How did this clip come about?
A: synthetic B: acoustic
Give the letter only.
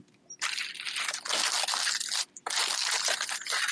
B